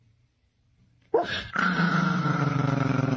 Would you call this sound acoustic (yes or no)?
no